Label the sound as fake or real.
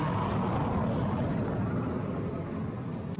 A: real